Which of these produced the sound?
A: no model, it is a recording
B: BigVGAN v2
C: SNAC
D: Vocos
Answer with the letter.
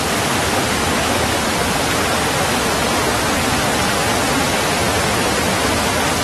A